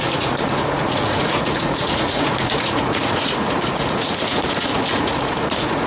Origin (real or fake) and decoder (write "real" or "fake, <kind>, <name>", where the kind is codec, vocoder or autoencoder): fake, vocoder, Vocos